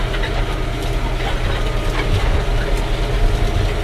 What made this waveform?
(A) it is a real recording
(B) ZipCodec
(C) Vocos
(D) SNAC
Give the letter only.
A